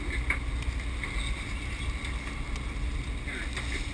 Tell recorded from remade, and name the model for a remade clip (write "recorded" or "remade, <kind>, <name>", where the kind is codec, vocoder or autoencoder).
recorded